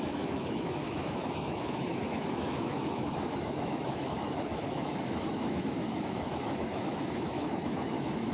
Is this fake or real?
fake